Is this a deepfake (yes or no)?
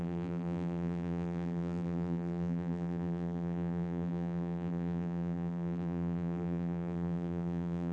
yes